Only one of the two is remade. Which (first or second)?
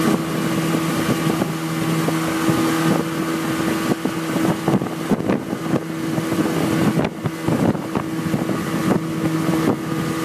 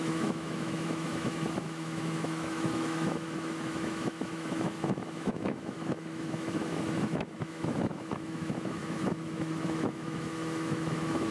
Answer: second